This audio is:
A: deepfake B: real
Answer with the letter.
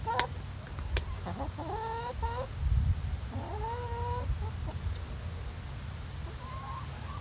B